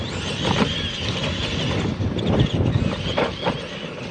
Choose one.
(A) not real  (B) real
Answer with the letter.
B